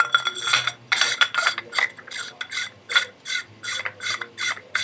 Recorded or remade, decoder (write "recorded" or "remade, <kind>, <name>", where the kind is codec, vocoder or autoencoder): recorded